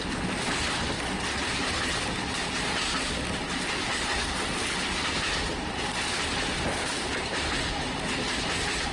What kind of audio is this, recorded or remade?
recorded